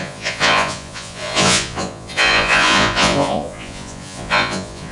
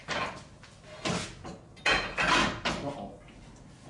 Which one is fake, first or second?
first